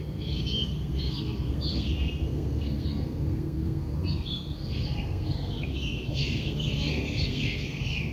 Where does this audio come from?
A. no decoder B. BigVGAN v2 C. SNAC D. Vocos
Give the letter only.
C